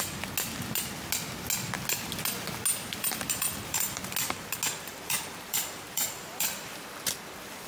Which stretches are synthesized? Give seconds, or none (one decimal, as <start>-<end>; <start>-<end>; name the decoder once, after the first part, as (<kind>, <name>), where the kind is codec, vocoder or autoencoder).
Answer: 2.7-4.1 (vocoder, BigVGAN v2); 4.9-7.0